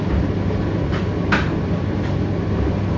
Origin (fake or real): real